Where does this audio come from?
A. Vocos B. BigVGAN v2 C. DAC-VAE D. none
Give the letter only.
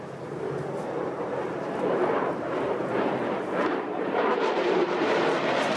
B